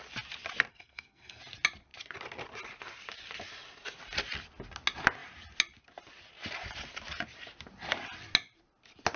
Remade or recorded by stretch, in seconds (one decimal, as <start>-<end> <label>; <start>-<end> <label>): 0.0-0.7 recorded; 0.7-1.4 remade; 1.4-9.2 recorded